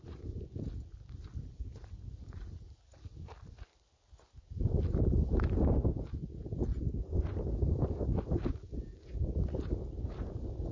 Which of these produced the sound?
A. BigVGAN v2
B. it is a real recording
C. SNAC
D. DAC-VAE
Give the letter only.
B